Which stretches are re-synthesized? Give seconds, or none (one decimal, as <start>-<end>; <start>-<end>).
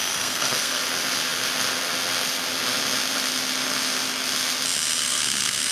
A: 0.0-0.8; 5.0-5.7